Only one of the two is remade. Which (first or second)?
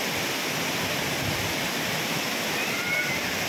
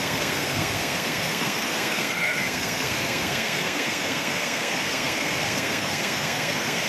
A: second